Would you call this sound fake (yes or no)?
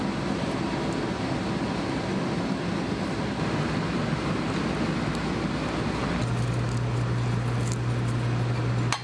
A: no